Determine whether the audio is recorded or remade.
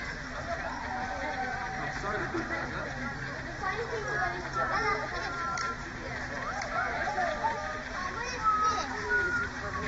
remade